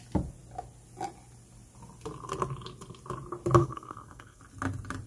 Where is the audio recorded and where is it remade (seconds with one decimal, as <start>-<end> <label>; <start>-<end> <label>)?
0.0-3.6 recorded; 3.6-4.4 remade; 4.4-5.1 recorded